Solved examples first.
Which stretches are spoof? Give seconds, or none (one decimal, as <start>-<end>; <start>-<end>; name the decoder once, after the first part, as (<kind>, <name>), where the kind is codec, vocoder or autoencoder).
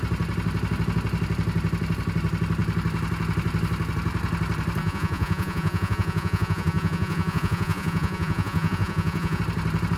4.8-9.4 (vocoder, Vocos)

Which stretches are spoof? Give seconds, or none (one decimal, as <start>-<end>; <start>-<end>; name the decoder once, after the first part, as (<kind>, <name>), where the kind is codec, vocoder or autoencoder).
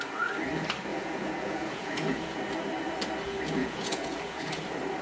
0.9-2.4 (vocoder, Vocos); 3.6-4.5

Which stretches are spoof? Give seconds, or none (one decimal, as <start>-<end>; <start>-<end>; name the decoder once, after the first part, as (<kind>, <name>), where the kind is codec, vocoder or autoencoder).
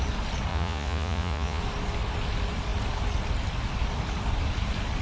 0.5-1.6 (vocoder, Vocos)